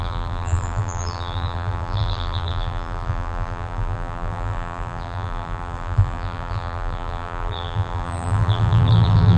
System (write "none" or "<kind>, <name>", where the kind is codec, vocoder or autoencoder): vocoder, BigVGAN v2